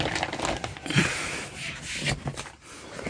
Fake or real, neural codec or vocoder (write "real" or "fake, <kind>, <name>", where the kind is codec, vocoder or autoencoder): real